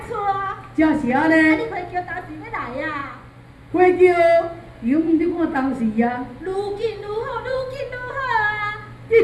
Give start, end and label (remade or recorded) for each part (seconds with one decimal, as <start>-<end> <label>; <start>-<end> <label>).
0.0-3.0 recorded; 3.0-3.7 remade; 3.7-4.6 recorded; 4.6-5.8 remade; 5.8-6.5 recorded; 6.5-7.8 remade; 7.8-9.2 recorded